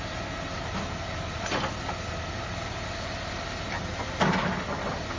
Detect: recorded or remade recorded